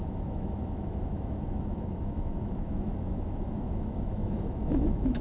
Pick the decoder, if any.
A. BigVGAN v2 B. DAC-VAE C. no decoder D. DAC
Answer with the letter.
B